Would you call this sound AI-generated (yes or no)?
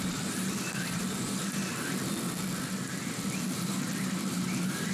yes